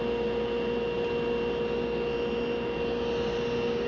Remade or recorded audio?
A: recorded